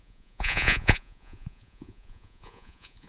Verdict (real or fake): fake